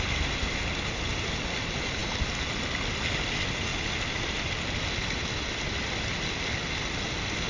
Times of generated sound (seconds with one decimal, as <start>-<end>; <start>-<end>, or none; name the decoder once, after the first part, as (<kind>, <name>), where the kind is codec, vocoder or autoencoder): none